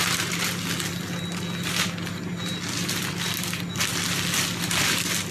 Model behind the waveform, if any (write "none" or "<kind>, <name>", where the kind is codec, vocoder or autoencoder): none